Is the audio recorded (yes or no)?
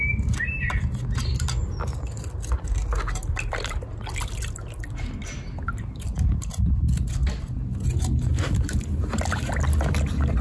yes